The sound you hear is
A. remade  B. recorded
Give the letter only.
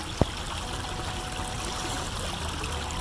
B